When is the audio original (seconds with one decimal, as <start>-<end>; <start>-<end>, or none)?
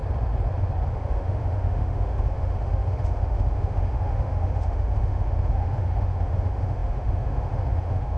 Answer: 0.0-0.9